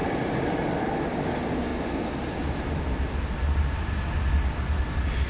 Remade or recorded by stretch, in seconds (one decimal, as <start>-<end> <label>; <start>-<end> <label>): 0.0-0.9 remade; 0.9-5.3 recorded